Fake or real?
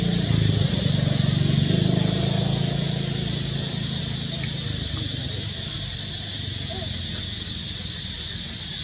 real